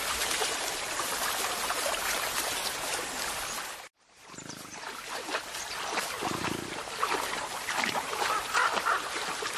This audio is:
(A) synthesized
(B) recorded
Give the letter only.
A